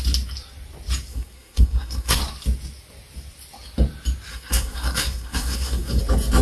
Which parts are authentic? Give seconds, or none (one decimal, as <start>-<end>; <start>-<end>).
0.0-1.1; 2.2-4.3; 6.0-6.4